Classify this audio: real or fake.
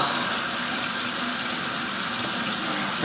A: real